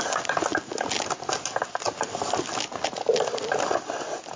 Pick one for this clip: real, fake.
real